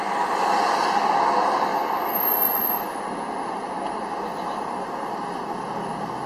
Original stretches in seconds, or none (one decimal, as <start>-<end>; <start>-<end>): 0.0-6.3